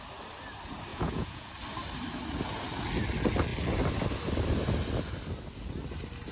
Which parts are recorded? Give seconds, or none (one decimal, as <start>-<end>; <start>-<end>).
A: 0.0-0.9; 1.5-6.3